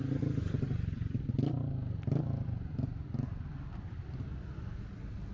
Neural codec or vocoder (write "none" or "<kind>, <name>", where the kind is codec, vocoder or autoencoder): none